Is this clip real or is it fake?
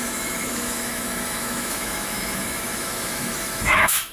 fake